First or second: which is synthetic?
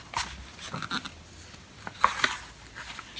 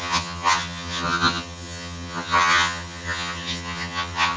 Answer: second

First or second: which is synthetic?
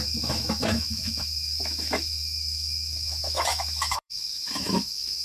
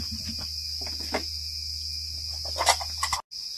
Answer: first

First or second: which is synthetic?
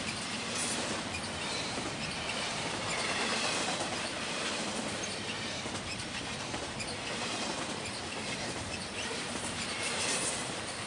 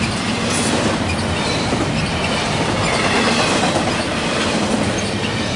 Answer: first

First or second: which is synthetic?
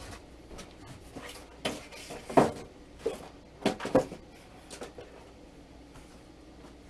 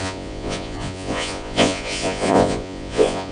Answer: second